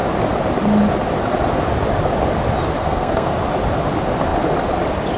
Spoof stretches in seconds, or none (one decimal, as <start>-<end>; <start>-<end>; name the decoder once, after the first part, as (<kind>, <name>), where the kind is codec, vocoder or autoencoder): 2.8-3.3 (codec, SNAC)